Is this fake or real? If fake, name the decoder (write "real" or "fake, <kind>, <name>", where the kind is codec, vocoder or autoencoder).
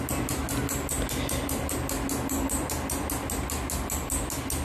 real